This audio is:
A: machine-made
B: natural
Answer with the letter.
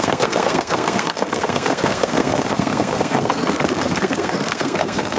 A